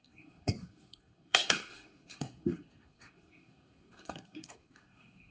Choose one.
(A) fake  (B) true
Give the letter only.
A